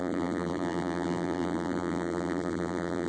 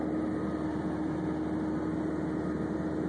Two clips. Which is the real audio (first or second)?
second